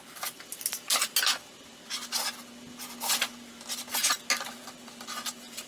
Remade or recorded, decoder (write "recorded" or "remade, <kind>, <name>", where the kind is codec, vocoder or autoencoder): recorded